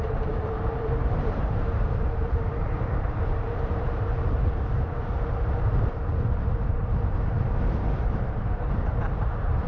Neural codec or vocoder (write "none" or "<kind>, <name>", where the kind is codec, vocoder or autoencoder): vocoder, BigVGAN v2